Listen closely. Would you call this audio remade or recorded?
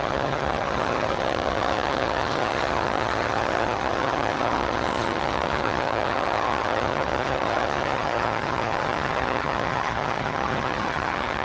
remade